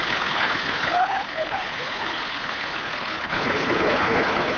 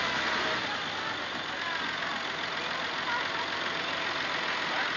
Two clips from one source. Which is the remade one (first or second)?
first